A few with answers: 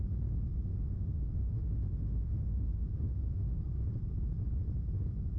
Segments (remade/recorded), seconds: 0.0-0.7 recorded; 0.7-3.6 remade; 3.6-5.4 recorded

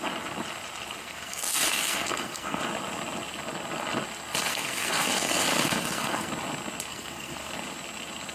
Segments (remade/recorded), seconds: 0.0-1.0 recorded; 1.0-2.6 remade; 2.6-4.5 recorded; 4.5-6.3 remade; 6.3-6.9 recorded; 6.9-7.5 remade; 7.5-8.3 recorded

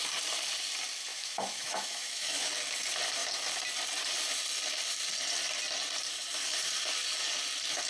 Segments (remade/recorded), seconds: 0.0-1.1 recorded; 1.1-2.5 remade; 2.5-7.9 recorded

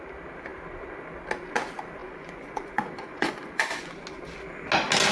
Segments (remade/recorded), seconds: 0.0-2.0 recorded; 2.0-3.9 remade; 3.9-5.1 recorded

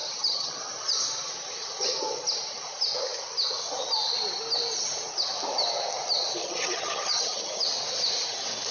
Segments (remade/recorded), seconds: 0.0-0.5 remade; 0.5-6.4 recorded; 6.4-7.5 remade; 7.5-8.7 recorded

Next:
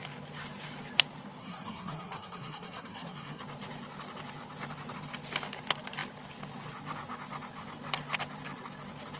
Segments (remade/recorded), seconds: 0.0-1.4 recorded; 1.4-3.4 remade; 3.4-9.2 recorded